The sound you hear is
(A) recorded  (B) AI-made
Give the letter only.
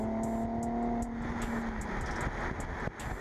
A